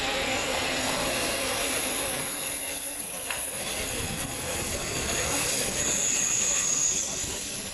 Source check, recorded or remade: remade